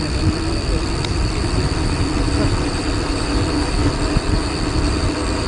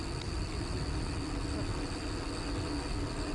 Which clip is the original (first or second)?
second